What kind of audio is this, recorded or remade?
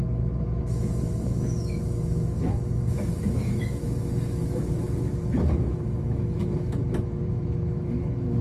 remade